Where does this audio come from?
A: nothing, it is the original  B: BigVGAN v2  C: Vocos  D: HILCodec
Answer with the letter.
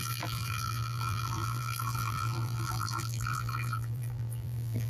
B